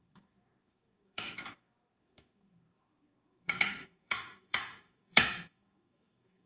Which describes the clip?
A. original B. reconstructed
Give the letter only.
B